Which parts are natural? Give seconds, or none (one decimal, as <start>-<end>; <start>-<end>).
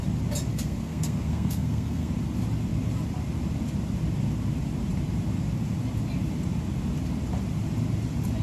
0.0-0.5; 2.1-8.4